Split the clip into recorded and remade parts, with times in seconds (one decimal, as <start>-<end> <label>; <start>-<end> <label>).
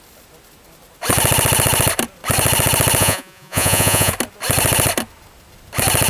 0.0-3.0 recorded; 3.0-4.1 remade; 4.1-6.1 recorded